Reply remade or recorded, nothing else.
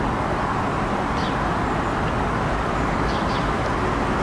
recorded